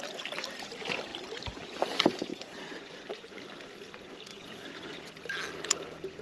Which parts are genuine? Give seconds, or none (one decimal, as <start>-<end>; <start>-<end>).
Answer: 0.0-2.3; 3.4-4.3; 5.1-6.2